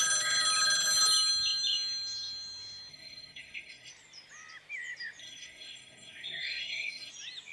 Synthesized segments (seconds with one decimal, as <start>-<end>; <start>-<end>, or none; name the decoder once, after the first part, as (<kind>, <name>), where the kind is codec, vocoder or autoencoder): 2.9-3.9 (codec, SNAC); 5.2-7.1